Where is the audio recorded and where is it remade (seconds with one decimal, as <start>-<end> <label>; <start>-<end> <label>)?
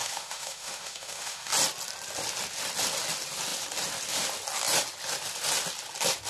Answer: 0.0-1.5 remade; 1.5-6.3 recorded